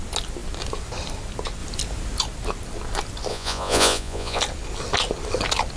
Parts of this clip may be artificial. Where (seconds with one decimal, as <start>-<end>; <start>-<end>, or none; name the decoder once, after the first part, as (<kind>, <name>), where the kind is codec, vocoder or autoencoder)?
3.3-4.4 (vocoder, Vocos)